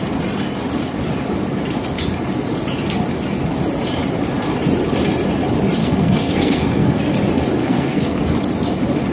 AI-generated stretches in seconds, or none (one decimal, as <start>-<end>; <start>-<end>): 5.8-7.0; 7.6-8.2